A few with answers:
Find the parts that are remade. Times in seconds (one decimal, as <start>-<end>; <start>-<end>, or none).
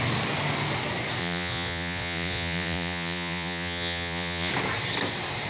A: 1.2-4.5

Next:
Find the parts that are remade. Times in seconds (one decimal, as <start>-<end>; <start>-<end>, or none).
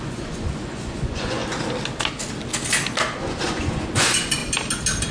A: 0.0-1.4; 3.2-4.4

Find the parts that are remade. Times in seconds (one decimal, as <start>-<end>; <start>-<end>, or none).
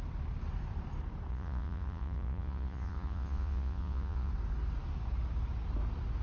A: 1.3-4.3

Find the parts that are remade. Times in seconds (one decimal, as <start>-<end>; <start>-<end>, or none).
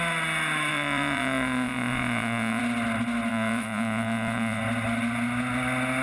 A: 0.7-2.6; 3.3-4.6